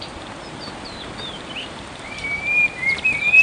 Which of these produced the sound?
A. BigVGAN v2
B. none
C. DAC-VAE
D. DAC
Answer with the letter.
A